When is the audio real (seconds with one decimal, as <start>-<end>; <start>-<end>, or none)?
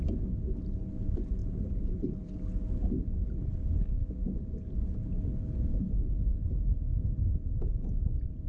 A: 0.0-1.4; 2.3-8.5